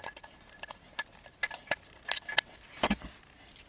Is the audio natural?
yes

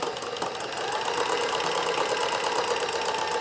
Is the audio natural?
yes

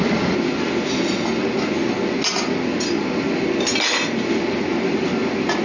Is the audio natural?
yes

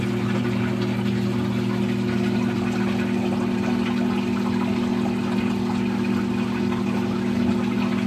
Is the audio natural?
yes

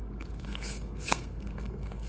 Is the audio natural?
no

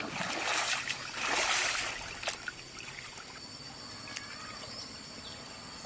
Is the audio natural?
yes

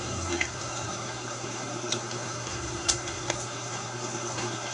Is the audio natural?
no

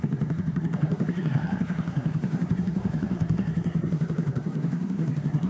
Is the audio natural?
no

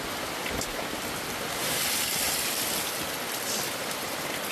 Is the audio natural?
yes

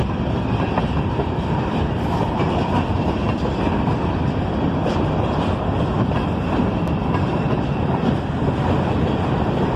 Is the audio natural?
no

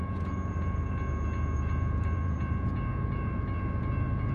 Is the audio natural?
no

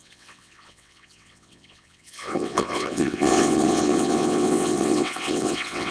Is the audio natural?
no